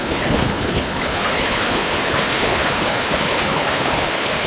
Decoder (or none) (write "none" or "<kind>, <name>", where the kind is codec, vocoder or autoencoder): codec, HILCodec